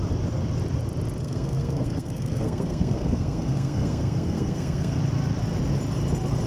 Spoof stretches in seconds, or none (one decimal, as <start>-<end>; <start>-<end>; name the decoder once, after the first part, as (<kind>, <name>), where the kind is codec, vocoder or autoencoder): 1.2-5.0 (codec, SNAC)